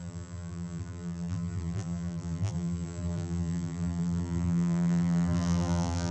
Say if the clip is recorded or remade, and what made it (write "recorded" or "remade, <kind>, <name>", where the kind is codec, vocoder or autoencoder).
remade, vocoder, BigVGAN v2